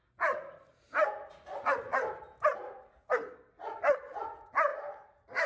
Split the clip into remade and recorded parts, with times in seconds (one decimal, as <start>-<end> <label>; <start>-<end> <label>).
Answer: 0.0-5.5 recorded